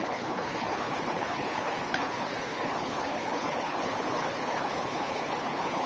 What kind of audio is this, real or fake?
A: fake